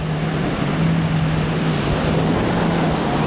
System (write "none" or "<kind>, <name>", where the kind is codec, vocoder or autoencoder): none